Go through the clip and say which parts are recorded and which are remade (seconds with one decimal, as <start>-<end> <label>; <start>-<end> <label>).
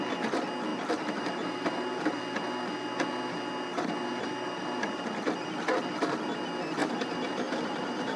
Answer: 0.0-0.7 recorded; 0.7-2.2 remade; 2.2-3.7 recorded; 3.7-5.0 remade; 5.0-6.8 recorded; 6.8-8.2 remade